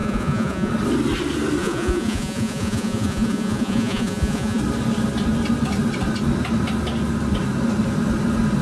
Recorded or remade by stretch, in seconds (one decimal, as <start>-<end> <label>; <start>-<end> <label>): 0.0-0.7 remade; 0.7-1.6 recorded; 1.6-4.6 remade; 4.6-8.6 recorded